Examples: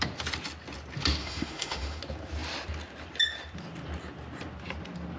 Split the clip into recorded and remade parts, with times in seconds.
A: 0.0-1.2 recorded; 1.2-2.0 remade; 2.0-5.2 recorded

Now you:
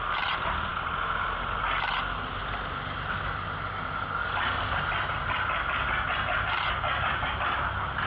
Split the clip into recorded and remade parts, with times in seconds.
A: 0.0-8.1 recorded

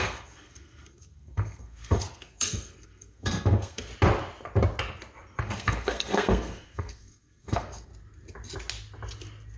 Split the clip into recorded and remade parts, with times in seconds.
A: 0.0-3.9 remade; 3.9-5.4 recorded; 5.4-7.9 remade; 7.9-9.6 recorded

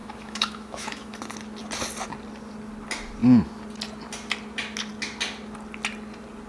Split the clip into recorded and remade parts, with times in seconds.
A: 0.0-1.2 remade; 1.2-6.5 recorded

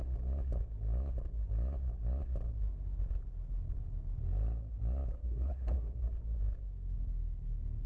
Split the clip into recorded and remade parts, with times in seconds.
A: 0.0-5.1 recorded; 5.1-6.0 remade; 6.0-7.9 recorded